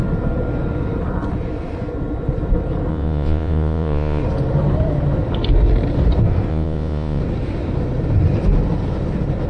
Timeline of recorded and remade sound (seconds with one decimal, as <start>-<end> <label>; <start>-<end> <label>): 0.0-2.9 recorded; 2.9-4.2 remade; 4.2-6.5 recorded; 6.5-7.2 remade; 7.2-9.5 recorded